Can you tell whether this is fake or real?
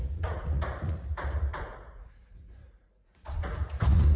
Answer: fake